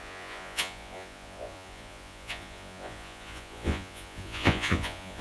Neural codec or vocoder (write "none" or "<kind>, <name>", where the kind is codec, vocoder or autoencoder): vocoder, Vocos